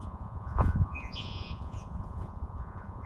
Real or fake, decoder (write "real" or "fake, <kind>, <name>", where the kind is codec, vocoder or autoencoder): fake, vocoder, Vocos